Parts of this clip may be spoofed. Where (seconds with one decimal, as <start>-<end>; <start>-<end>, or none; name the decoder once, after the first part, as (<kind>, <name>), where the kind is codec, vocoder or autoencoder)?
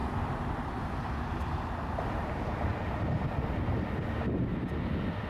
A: 0.0-1.1 (vocoder, BigVGAN v2); 2.7-4.0